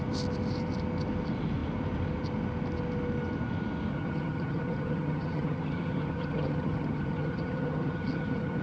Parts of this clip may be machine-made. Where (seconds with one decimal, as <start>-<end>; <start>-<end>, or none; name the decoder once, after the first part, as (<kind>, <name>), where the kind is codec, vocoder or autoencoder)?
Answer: 3.9-8.6 (vocoder, HiFi-GAN)